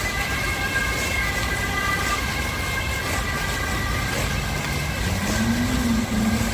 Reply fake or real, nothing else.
real